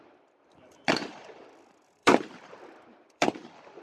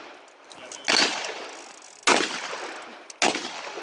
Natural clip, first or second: second